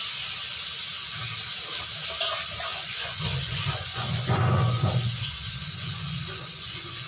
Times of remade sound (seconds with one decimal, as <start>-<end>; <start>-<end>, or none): 2.7-7.1